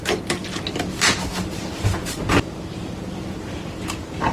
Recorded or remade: recorded